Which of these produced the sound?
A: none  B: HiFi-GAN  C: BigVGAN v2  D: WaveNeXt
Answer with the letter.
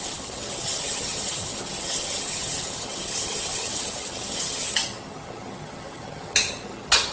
B